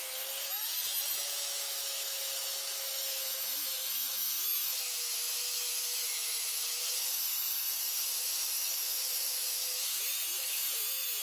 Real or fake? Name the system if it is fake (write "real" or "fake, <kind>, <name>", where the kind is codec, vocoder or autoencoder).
fake, autoencoder, DAC-VAE